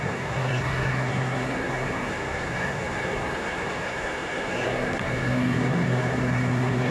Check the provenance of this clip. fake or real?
fake